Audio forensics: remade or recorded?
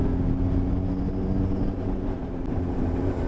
recorded